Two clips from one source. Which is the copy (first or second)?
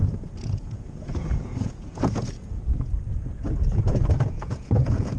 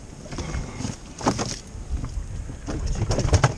first